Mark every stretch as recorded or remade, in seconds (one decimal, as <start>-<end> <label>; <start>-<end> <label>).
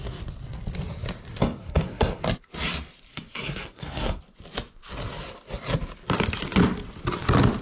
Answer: 0.0-1.6 recorded; 1.6-2.2 remade; 2.2-3.1 recorded; 3.1-4.2 remade; 4.2-7.6 recorded